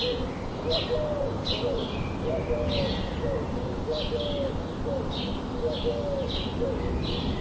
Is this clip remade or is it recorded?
recorded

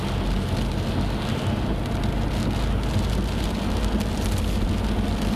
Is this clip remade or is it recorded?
recorded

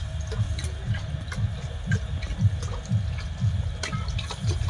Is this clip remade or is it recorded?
recorded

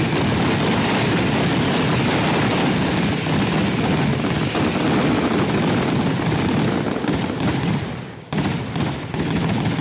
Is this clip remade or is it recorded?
recorded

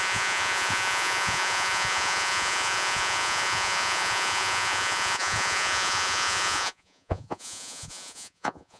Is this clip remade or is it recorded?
remade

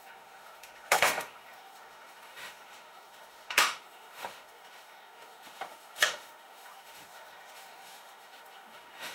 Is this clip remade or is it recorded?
remade